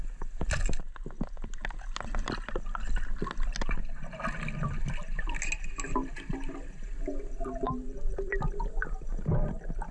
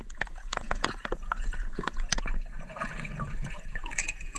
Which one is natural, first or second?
first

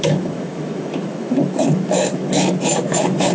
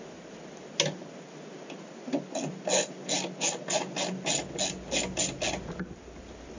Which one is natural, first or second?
second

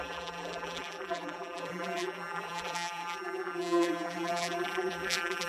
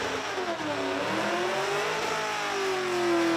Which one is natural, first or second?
second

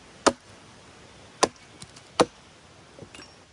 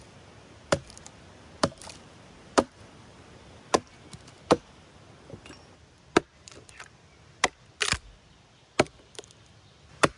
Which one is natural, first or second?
first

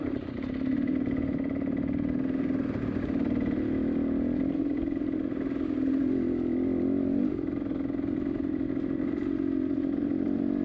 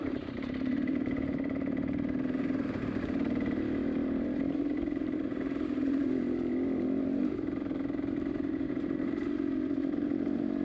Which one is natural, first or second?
first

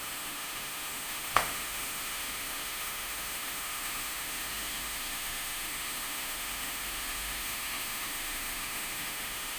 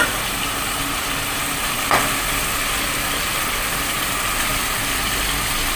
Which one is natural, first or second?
second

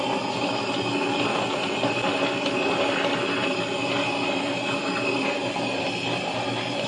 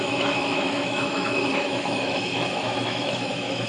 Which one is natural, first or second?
first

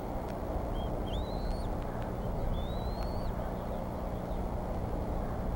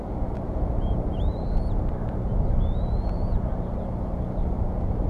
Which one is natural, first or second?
first